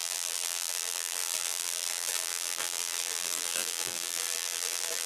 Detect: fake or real fake